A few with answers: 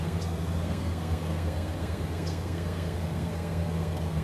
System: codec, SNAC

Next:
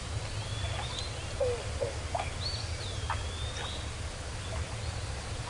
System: none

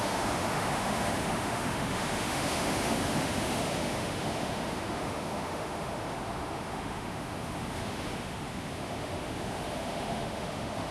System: autoencoder, DAC-VAE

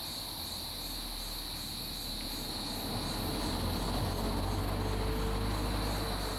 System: none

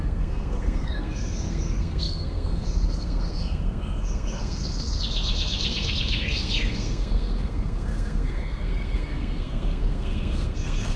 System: codec, SNAC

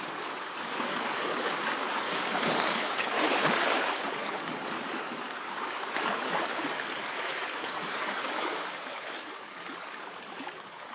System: codec, DAC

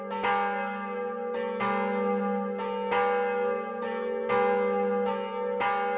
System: none